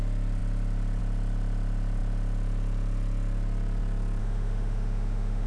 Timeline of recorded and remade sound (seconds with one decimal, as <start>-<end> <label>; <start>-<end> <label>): 0.0-4.2 recorded; 4.2-5.5 remade

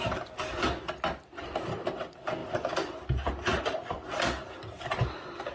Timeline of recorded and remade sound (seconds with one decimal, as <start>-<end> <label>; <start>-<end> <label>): 0.0-5.5 recorded

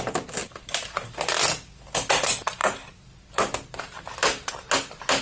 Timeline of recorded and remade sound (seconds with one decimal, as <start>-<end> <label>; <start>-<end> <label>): 0.0-5.2 recorded

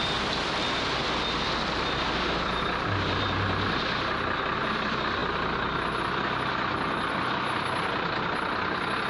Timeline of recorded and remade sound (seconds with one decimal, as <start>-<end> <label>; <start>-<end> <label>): 0.0-9.1 recorded

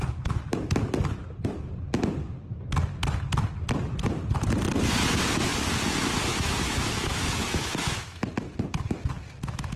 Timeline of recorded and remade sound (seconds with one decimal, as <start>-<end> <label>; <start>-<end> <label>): 0.0-6.3 recorded; 6.3-8.2 remade; 8.2-9.8 recorded

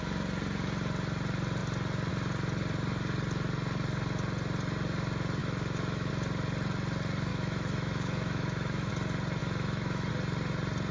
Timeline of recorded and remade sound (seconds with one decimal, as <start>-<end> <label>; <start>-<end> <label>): 0.0-5.4 recorded; 5.4-6.1 remade; 6.1-7.3 recorded; 7.3-8.9 remade; 8.9-9.4 recorded; 9.4-10.1 remade; 10.1-10.9 recorded